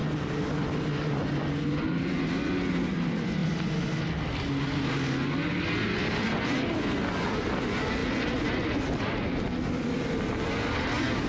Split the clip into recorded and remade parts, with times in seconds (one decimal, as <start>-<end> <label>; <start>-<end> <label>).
0.0-11.3 recorded